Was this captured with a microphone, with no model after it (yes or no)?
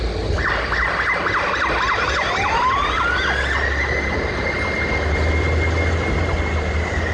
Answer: yes